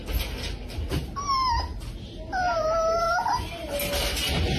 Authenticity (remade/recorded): recorded